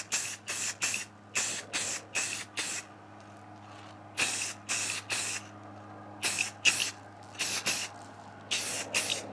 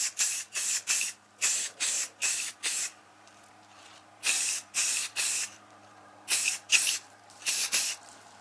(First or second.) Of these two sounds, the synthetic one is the second